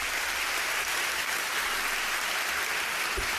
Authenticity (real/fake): real